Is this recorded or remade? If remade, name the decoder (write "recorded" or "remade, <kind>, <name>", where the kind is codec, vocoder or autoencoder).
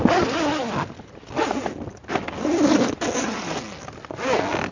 recorded